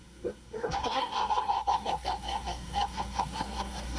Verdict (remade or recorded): remade